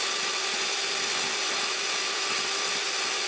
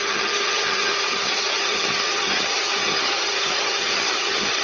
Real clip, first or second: first